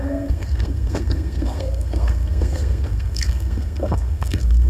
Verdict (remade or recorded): remade